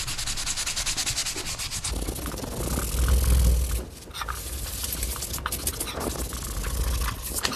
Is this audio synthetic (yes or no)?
no